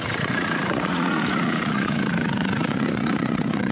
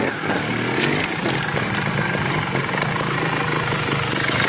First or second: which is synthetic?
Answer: first